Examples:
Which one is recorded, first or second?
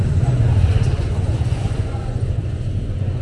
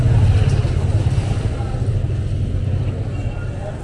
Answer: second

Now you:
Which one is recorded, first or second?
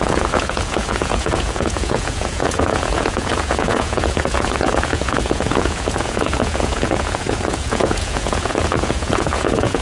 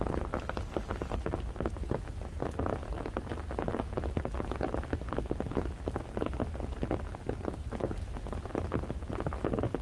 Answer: second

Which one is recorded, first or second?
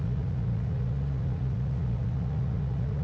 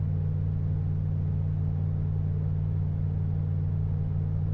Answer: second